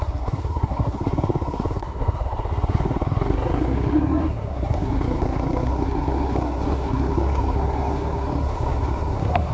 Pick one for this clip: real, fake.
fake